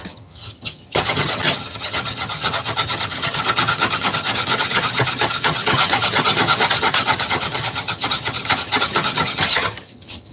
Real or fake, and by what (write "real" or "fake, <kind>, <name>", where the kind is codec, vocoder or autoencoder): fake, vocoder, HiFi-GAN